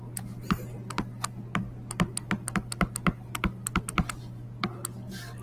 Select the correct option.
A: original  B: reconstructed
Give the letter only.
A